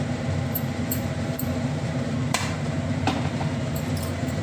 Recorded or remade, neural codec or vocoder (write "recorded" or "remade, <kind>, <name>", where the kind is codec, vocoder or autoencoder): remade, vocoder, BigVGAN v2